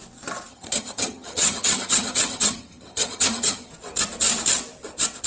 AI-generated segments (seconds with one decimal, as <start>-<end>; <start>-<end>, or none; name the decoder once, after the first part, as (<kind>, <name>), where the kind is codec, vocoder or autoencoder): 0.5-3.7 (vocoder, HiFi-GAN)